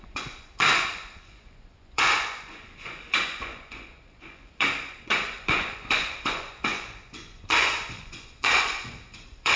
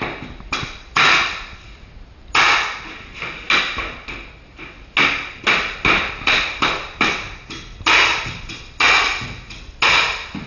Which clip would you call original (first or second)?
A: second